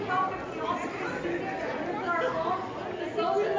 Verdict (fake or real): real